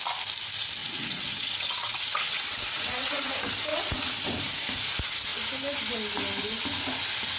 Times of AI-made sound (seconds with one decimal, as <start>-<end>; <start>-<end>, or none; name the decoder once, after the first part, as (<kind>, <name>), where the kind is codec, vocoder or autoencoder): 0.8-3.3 (vocoder, WaveNeXt); 3.7-4.4